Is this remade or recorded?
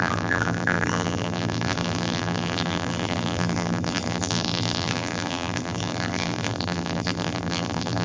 remade